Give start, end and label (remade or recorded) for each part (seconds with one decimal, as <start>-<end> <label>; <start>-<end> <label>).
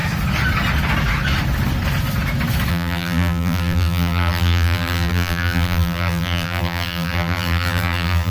0.0-2.7 recorded; 2.7-8.3 remade